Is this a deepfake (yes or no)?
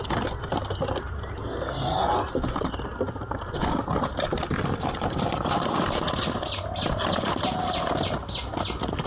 no